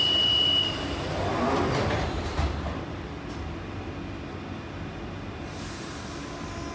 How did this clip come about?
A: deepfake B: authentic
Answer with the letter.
B